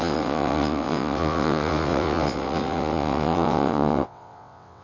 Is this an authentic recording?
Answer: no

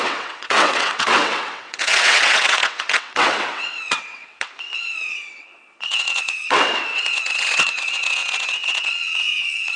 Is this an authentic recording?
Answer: no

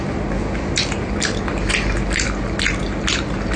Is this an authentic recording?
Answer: yes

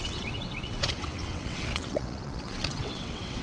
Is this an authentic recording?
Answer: no